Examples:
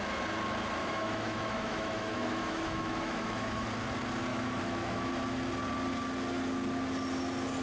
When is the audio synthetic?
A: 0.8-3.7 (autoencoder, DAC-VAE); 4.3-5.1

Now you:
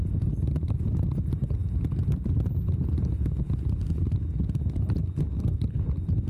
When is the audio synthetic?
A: none

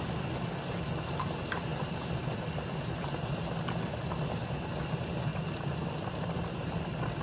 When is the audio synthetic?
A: 5.3-7.2 (vocoder, BigVGAN v2)

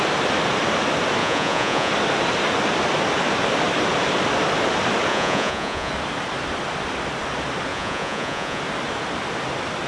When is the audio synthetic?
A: 1.2-1.9 (vocoder, Vocos); 5.1-5.9; 7.7-8.6

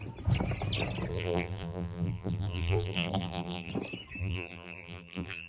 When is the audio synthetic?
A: 1.1-3.7 (vocoder, BigVGAN v2); 4.2-5.5

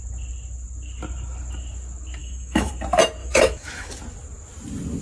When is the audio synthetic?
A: 2.2-2.7 (autoencoder, DAC-VAE); 3.2-3.9